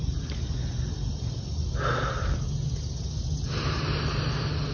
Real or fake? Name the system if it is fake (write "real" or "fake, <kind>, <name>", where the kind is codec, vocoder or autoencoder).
real